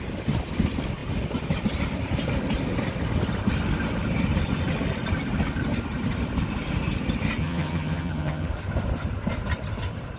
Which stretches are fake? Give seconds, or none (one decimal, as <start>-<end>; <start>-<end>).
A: 7.4-8.5